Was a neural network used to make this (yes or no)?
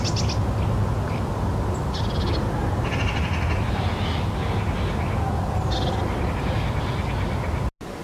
no